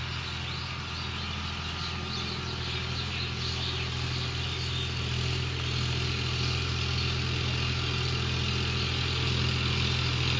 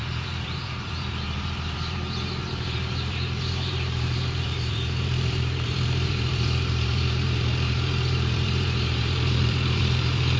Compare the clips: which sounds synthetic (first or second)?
second